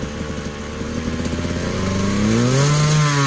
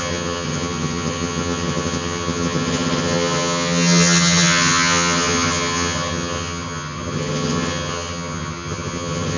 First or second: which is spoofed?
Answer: second